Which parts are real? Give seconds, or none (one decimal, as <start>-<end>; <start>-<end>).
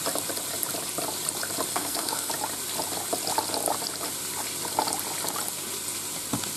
0.0-1.7; 2.3-6.6